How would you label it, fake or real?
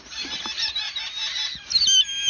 real